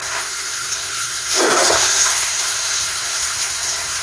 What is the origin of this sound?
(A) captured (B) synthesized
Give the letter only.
B